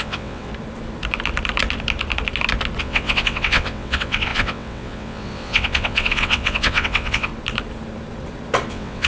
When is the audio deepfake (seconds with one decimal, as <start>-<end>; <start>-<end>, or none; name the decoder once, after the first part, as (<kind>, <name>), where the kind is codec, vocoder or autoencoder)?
0.0-0.5 (vocoder, WaveNeXt); 2.8-7.3; 8.7-9.1